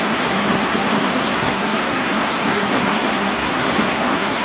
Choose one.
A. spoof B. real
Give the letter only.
A